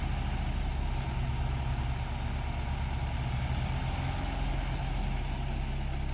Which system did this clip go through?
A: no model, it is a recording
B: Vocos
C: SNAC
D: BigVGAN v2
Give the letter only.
A